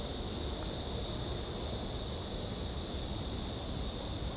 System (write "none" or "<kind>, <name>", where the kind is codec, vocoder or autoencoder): none